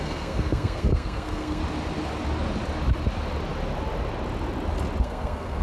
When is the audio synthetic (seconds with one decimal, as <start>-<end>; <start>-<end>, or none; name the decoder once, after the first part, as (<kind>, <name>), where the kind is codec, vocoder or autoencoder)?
0.0-1.6 (codec, SNAC); 5.0-5.6